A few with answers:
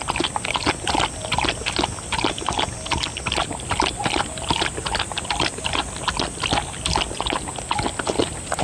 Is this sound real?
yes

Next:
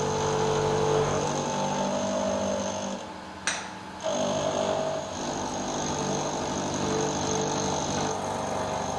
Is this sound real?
yes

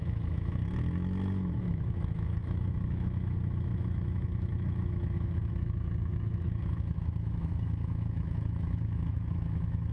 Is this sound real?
no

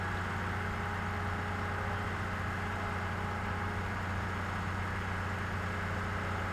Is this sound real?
yes